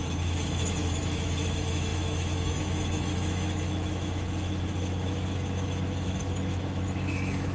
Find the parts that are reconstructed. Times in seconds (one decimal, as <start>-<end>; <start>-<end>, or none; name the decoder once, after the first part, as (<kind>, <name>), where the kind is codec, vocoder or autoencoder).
0.0-7.5 (autoencoder, DAC-VAE)